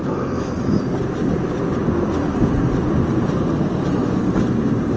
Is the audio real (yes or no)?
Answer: yes